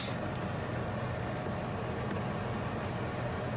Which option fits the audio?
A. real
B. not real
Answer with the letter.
A